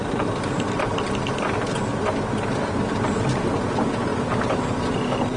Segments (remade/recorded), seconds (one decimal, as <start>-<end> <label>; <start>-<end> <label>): 0.0-5.4 recorded